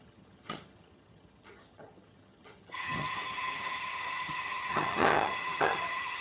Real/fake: fake